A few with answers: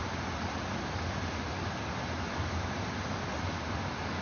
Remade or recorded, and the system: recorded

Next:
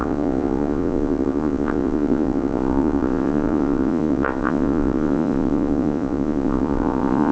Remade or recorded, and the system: remade, vocoder, Vocos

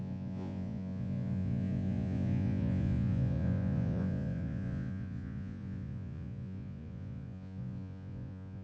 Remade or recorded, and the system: remade, vocoder, Vocos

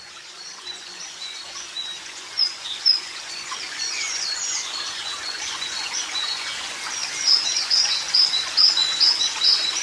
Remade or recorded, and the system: remade, vocoder, Vocos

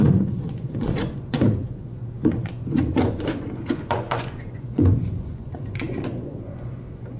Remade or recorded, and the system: remade, vocoder, Vocos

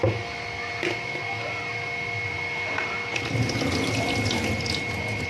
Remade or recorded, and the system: recorded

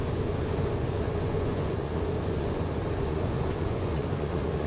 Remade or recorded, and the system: remade, vocoder, Vocos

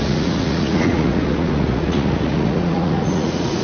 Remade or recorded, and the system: remade, vocoder, Vocos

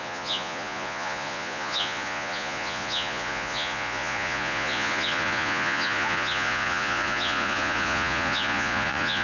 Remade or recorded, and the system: remade, vocoder, Vocos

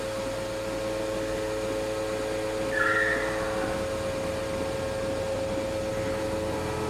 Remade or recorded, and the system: recorded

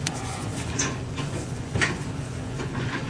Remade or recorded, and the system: remade, vocoder, Vocos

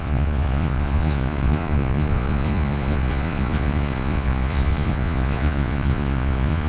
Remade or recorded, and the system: remade, vocoder, Vocos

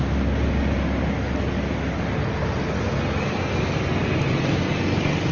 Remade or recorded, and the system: recorded